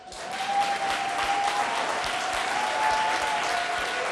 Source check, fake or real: real